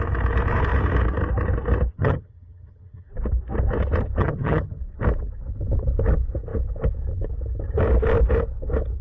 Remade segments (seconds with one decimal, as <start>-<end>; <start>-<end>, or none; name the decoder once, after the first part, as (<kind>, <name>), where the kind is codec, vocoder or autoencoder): 1.9-3.1 (vocoder, HiFi-GAN); 4.2-4.8